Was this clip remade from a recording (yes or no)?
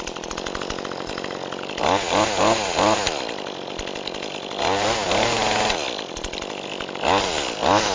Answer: no